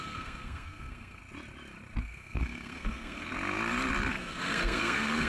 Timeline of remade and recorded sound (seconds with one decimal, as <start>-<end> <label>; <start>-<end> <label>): 0.0-1.2 remade; 1.2-2.0 recorded; 2.0-3.3 remade; 3.3-4.1 recorded; 4.1-5.3 remade